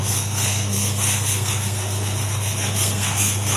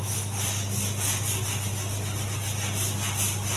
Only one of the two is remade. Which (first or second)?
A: first